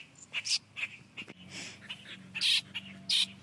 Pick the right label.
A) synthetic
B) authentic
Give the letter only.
B